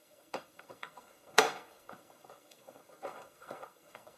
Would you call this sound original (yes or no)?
no